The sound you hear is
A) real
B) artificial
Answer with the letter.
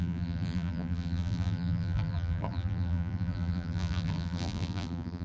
B